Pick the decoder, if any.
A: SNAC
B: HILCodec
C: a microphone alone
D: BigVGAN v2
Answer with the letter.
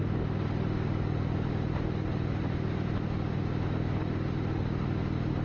C